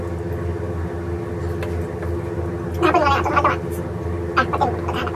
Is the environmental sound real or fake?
real